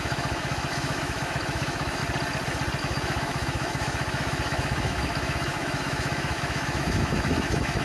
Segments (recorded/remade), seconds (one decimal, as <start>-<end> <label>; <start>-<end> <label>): 0.0-2.0 remade; 2.0-2.8 recorded; 2.8-7.8 remade